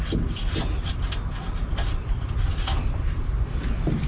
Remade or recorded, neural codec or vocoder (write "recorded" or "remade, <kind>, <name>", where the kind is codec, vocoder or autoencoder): recorded